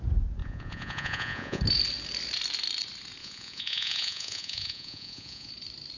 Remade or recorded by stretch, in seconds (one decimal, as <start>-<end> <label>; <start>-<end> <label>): 0.0-0.4 recorded; 0.4-1.6 remade; 1.6-3.2 recorded; 3.2-5.5 remade; 5.5-6.0 recorded